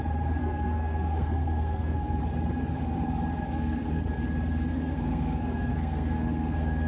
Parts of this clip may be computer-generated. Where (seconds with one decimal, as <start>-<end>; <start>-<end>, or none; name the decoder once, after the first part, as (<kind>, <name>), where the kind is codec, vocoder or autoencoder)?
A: 0.4-2.2 (codec, SNAC); 3.5-4.0; 4.7-6.9